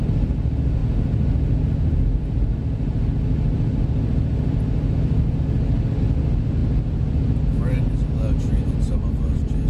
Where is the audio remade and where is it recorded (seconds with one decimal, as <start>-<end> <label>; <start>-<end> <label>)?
0.0-9.7 recorded